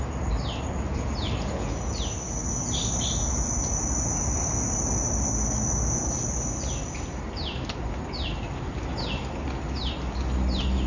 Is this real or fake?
real